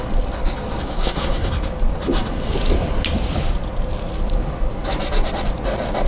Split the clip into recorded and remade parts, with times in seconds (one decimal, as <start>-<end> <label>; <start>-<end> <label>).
0.0-0.8 recorded; 0.8-1.5 remade; 1.5-6.1 recorded

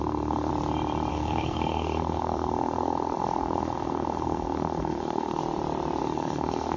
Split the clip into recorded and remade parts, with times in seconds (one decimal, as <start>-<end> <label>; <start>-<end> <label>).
0.0-0.5 remade; 0.5-1.1 recorded; 1.1-5.4 remade; 5.4-6.0 recorded; 6.0-6.8 remade

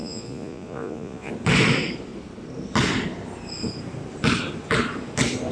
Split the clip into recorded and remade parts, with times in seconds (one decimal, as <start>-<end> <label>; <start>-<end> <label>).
0.0-1.3 remade; 1.3-5.5 recorded